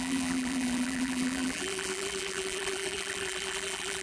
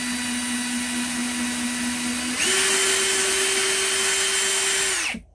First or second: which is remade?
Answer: first